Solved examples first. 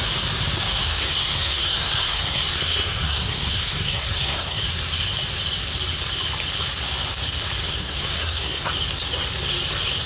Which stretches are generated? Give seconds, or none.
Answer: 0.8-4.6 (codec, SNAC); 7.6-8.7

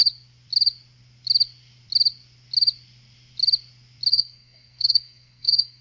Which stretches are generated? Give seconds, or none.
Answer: 4.1-5.8 (codec, SNAC)